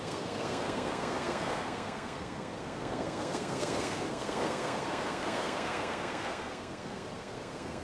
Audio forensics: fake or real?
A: fake